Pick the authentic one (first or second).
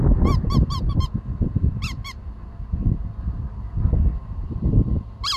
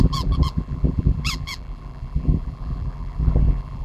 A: first